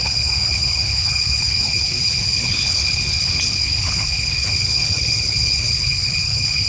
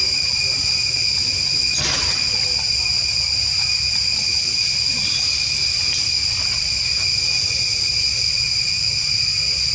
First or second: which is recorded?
second